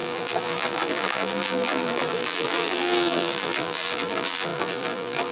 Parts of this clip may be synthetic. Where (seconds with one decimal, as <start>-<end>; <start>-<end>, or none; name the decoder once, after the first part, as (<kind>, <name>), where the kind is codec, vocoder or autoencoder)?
0.0-5.3 (vocoder, BigVGAN v2)